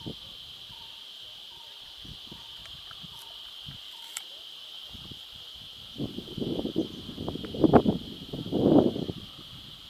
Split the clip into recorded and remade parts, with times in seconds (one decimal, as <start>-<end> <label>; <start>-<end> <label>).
0.0-9.9 recorded